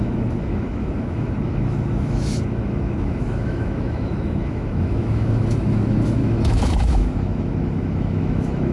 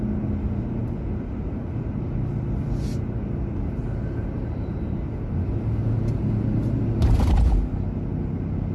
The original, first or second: second